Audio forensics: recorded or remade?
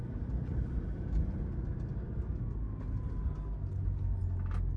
recorded